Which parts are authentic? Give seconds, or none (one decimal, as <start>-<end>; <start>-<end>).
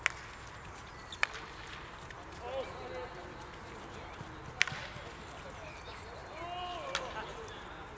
0.0-8.0